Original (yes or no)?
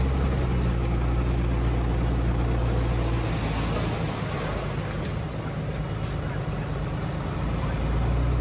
yes